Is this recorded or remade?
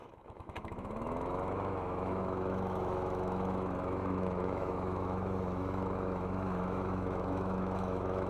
remade